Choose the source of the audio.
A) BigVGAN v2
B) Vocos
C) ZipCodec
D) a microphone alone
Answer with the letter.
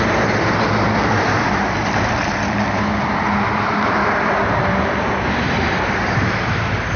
A